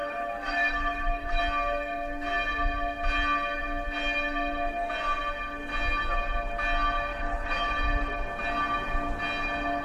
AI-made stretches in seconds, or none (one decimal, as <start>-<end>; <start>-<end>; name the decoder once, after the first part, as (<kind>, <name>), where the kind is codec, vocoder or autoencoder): 0.0-1.4 (autoencoder, DAC-VAE); 7.1-7.7